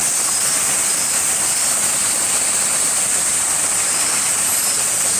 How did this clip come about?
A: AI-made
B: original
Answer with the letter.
B